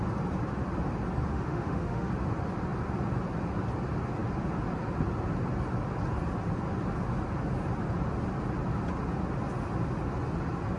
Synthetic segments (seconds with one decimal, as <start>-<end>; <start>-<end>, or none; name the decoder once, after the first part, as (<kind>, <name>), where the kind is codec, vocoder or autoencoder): 1.3-2.1 (autoencoder, DAC-VAE)